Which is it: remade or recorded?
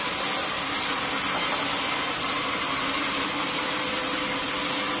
recorded